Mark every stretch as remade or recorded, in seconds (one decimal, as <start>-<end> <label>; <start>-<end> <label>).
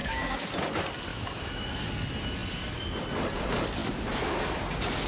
0.0-0.5 remade; 0.5-1.1 recorded; 1.1-1.9 remade; 1.9-5.1 recorded